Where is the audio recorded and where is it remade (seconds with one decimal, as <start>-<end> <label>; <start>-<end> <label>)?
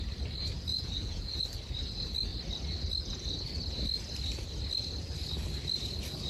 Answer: 0.0-0.7 recorded; 0.7-1.4 remade; 1.4-6.3 recorded